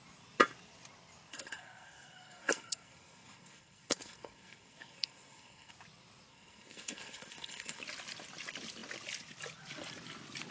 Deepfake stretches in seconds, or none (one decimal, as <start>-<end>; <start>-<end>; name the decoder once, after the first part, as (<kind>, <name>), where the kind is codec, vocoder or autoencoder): 1.3-5.7 (codec, SNAC); 6.3-7.8